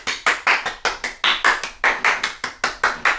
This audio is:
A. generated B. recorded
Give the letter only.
B